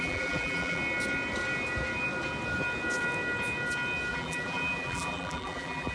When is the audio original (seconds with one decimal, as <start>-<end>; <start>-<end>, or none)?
0.8-4.1